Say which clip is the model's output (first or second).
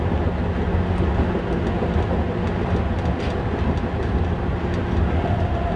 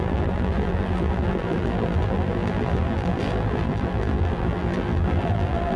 second